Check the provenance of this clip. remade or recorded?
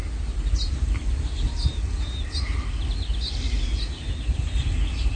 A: recorded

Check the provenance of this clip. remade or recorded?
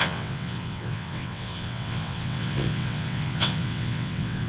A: remade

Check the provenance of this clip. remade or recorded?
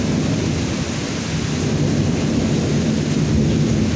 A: recorded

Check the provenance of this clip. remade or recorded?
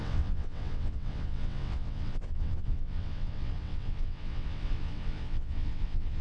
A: remade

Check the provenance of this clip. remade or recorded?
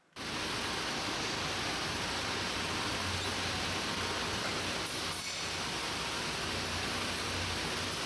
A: recorded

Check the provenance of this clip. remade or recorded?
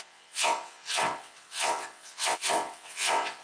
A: remade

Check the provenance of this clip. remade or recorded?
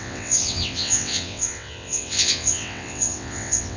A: remade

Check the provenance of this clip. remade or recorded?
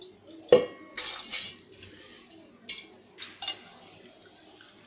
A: recorded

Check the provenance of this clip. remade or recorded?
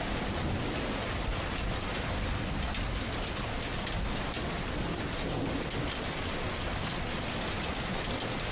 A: recorded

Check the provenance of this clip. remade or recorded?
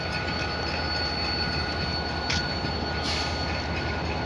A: recorded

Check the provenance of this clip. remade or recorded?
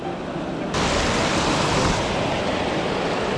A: recorded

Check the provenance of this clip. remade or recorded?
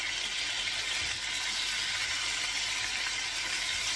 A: recorded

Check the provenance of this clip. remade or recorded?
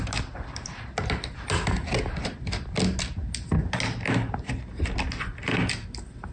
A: recorded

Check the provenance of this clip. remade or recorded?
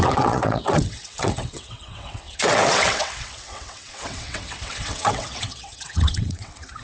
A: remade